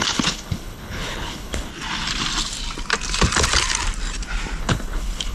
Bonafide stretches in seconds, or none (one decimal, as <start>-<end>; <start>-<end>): 1.7-4.6